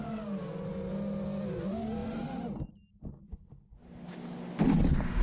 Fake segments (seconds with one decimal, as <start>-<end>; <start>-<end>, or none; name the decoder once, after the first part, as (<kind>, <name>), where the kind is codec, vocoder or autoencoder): none